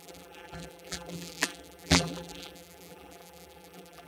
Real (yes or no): no